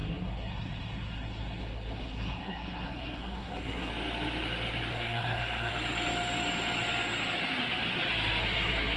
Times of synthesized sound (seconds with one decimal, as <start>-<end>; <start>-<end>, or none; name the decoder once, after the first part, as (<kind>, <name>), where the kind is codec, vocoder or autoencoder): 0.0-3.9 (codec, SNAC); 4.9-5.7; 8.4-9.0